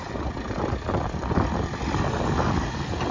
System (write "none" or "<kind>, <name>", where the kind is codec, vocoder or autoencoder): none